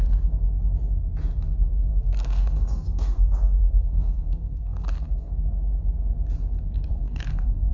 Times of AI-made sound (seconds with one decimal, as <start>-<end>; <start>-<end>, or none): 1.9-5.3; 6.9-7.7